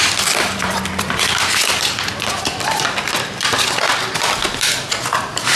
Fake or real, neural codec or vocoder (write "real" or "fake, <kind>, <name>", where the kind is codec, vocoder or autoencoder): fake, vocoder, BigVGAN v2